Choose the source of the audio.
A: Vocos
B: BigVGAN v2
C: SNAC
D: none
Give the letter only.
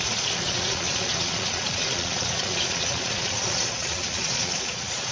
A